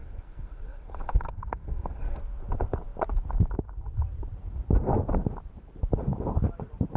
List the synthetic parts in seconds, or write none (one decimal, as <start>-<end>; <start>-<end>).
0.0-2.2